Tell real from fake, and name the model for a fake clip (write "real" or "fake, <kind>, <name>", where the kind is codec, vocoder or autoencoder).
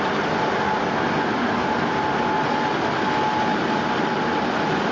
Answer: real